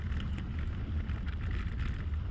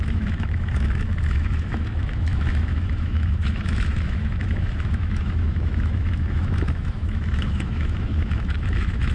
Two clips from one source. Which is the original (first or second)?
first